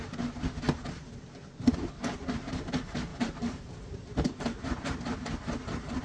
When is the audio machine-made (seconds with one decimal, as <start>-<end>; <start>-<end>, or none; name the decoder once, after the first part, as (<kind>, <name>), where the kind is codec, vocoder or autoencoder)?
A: 2.2-2.7 (vocoder, BigVGAN v2); 3.1-6.0